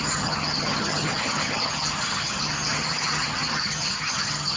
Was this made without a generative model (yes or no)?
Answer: no